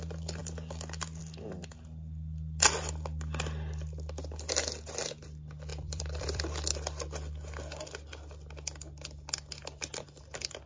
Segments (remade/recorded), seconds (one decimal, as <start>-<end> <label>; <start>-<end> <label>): 0.0-5.7 recorded; 5.7-6.4 remade; 6.4-10.7 recorded